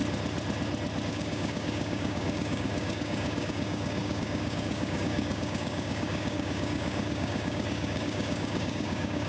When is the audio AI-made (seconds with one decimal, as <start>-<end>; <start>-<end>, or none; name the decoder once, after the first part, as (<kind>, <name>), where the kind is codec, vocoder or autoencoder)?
1.1-9.3 (codec, DAC)